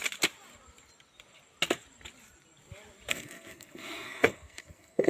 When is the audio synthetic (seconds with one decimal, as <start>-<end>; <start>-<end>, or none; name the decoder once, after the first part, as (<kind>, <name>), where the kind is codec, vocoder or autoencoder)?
3.1-5.1 (codec, SNAC)